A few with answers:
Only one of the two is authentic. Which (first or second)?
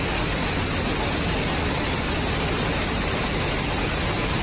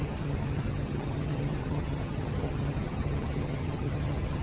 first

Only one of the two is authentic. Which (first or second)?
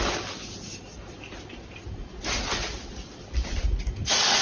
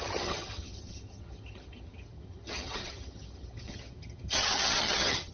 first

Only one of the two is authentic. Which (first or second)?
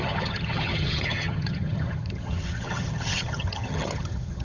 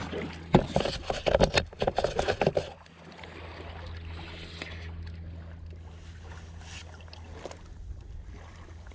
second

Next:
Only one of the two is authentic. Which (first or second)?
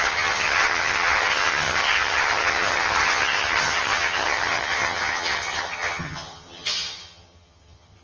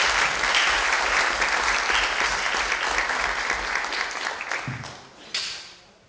second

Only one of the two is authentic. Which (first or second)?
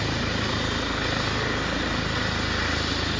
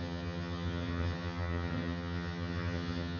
first